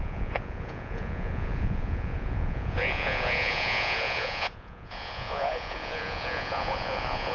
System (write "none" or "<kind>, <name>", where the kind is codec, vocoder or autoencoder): vocoder, Vocos